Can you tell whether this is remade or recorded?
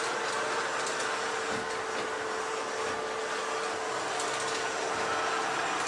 recorded